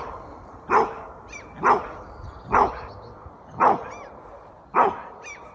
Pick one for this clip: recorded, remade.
recorded